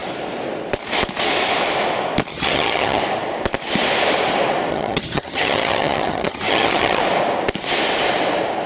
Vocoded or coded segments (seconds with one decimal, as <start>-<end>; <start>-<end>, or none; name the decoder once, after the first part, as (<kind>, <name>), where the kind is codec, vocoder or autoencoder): 2.3-3.0 (vocoder, HiFi-GAN); 4.7-7.0